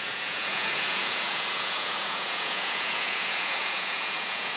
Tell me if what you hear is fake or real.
fake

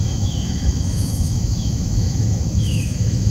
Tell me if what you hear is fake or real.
fake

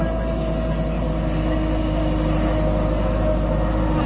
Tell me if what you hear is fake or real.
real